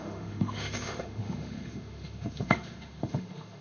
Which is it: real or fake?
fake